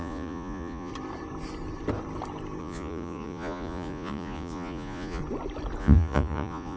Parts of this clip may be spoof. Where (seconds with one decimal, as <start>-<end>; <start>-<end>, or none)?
0.0-0.9; 2.6-5.2; 5.8-6.8